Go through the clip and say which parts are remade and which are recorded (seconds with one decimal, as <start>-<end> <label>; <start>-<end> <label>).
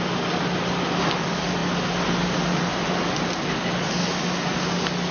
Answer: 0.0-5.1 recorded